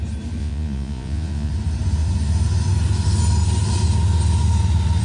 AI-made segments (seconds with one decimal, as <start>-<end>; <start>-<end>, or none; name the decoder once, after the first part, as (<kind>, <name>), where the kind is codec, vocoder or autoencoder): 0.4-1.5 (vocoder, Vocos)